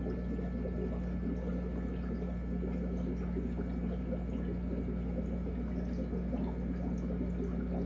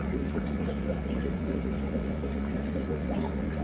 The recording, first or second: first